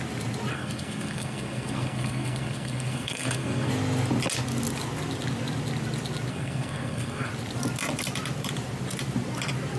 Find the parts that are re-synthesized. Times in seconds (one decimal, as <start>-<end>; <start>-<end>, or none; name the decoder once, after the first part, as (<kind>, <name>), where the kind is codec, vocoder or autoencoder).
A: 0.5-3.7 (codec, SNAC); 6.3-7.3